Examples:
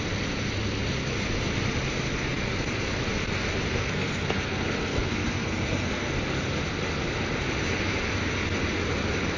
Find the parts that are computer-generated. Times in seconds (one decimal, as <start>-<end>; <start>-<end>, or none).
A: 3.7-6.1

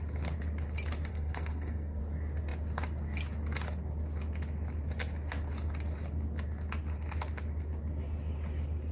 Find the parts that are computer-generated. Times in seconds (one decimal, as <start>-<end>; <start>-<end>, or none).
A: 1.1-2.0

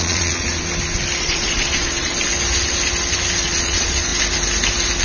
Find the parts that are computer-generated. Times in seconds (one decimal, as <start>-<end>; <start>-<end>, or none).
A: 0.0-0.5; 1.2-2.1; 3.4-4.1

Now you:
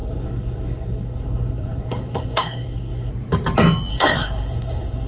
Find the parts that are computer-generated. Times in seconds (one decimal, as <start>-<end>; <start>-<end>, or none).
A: 0.0-3.1; 3.9-5.1

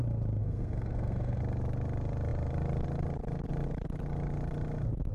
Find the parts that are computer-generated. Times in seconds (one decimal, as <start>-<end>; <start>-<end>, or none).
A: 0.4-1.4